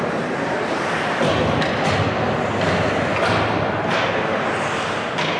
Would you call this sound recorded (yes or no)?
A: yes